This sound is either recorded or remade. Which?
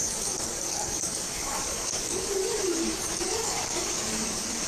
remade